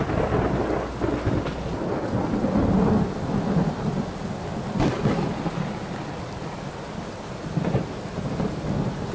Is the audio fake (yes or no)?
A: no